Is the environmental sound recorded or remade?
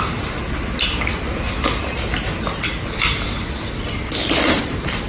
recorded